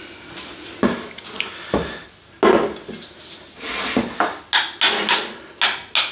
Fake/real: real